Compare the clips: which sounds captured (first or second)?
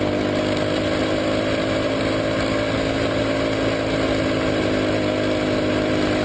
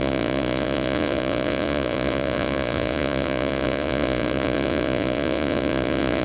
first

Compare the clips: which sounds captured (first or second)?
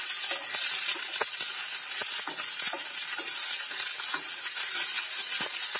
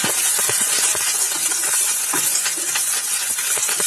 first